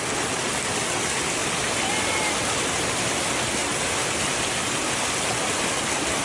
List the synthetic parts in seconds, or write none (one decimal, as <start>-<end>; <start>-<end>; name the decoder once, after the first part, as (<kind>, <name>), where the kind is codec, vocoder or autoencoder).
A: none

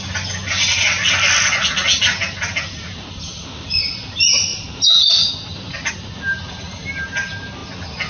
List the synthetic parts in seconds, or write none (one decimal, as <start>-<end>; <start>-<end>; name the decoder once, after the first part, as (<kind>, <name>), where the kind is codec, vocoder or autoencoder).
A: none

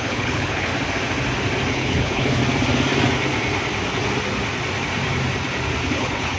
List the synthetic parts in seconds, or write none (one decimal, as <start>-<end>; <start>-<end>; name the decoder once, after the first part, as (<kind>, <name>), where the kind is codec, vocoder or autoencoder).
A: 0.0-0.7 (codec, HILCodec); 1.7-2.4; 5.9-6.4

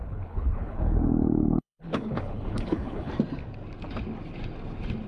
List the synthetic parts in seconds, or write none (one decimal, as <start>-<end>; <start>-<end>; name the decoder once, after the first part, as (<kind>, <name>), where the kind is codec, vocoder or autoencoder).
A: 0.0-3.1 (codec, HILCodec)

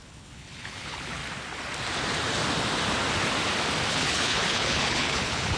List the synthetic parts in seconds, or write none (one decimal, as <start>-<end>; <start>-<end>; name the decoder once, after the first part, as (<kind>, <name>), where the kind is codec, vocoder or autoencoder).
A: 0.0-1.2 (codec, HILCodec); 3.9-5.6

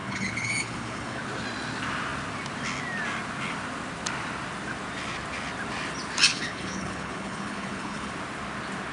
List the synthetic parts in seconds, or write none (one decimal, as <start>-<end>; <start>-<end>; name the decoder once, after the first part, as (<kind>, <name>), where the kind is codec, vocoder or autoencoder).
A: 0.0-1.2 (codec, HILCodec); 6.3-8.1

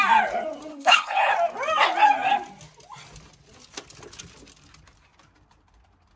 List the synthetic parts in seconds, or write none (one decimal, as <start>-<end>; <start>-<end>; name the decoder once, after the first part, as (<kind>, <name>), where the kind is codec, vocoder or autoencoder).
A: 0.7-1.3 (codec, HILCodec)

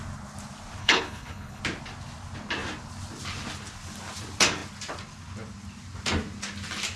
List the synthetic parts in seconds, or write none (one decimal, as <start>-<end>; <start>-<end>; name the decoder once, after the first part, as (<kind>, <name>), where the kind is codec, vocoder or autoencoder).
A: 0.8-1.6 (codec, HILCodec)